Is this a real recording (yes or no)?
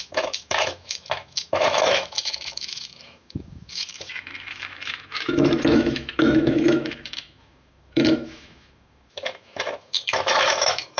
no